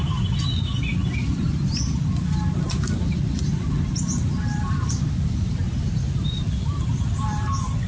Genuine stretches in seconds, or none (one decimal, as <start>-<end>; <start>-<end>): 0.0-7.9

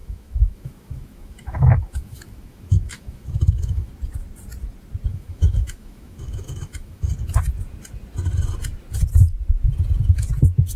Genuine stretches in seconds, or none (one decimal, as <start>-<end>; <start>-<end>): 3.9-5.1; 7.1-10.8